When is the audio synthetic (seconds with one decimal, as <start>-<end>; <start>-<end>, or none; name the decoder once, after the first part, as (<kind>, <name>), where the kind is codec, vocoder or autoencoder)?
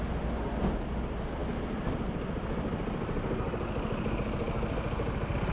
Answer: none